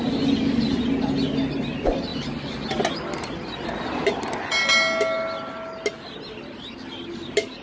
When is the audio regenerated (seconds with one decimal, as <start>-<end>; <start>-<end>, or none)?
none